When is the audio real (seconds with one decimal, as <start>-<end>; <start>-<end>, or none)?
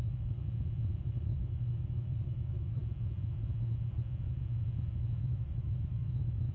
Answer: 0.4-1.0; 2.8-5.2